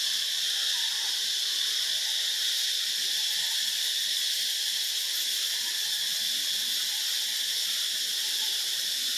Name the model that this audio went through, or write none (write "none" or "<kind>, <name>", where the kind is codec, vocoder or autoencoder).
none